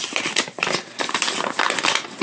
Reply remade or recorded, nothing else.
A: remade